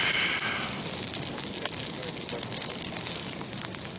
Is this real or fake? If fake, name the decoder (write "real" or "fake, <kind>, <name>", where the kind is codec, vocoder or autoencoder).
real